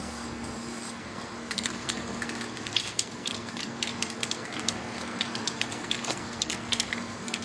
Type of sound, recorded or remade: remade